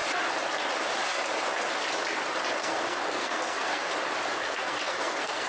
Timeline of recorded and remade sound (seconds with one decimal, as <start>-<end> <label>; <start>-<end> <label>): 0.0-2.6 recorded; 2.6-3.9 remade; 3.9-4.3 recorded; 4.3-5.5 remade